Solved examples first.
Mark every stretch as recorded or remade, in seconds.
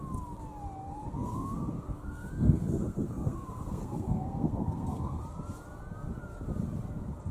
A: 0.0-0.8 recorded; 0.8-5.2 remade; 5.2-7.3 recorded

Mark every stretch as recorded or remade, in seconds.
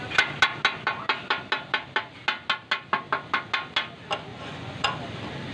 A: 0.0-4.3 recorded; 4.3-4.8 remade; 4.8-5.5 recorded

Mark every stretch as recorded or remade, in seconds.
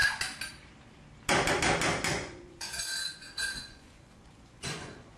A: 0.0-2.1 recorded; 2.1-5.2 remade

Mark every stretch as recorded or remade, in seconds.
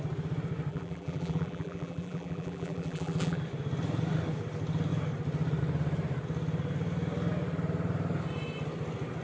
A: 0.0-0.7 recorded; 0.7-3.4 remade; 3.4-9.2 recorded